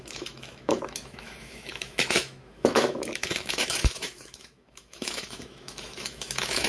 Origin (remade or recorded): remade